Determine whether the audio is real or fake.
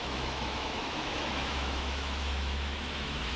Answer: fake